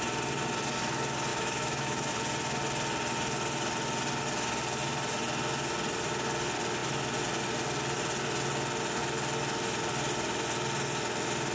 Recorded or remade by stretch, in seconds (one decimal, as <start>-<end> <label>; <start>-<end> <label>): 0.0-1.3 recorded; 1.3-2.1 remade; 2.1-11.5 recorded